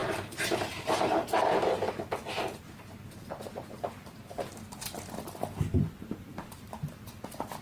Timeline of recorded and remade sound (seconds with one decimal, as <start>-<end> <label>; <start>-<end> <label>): 0.0-4.6 remade; 4.6-5.7 recorded; 5.7-6.9 remade; 6.9-7.6 recorded